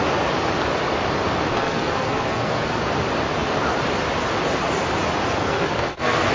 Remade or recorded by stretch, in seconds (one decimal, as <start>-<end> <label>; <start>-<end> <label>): 0.0-1.5 recorded; 1.5-2.8 remade; 2.8-5.4 recorded; 5.4-6.3 remade